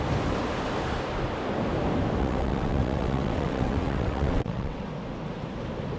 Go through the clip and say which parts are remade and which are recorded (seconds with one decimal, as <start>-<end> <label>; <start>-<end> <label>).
0.0-2.2 recorded; 2.2-4.8 remade; 4.8-6.0 recorded